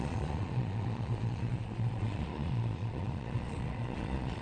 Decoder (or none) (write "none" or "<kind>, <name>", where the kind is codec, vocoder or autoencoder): vocoder, Vocos